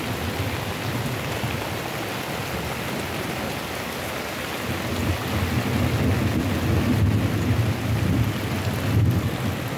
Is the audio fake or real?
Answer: real